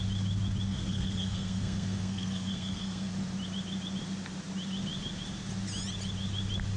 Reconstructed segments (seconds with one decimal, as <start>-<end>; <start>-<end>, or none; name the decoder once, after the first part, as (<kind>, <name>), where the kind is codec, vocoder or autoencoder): 0.7-3.1 (codec, SNAC)